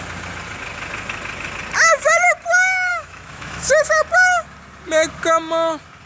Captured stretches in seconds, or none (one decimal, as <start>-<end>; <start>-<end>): 0.0-2.9; 3.7-6.1